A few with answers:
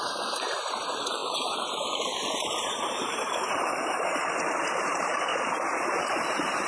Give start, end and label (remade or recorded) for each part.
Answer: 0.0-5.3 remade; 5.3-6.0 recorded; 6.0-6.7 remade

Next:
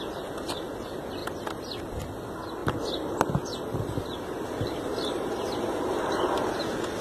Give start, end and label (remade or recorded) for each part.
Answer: 0.0-2.6 recorded; 2.6-6.1 remade; 6.1-7.0 recorded

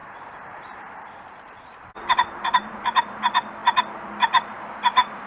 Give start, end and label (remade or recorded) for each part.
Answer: 0.0-3.2 remade; 3.2-3.6 recorded; 3.6-5.3 remade